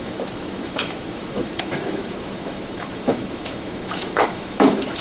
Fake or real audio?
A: fake